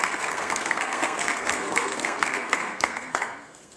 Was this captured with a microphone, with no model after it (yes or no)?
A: no